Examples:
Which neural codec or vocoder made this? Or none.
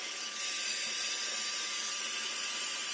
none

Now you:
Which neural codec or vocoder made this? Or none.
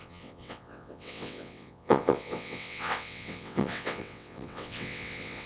vocoder, WaveNeXt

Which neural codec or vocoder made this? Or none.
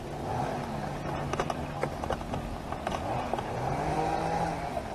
none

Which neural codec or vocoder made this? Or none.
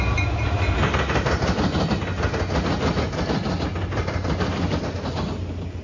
none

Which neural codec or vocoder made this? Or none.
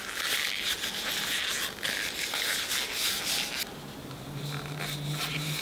none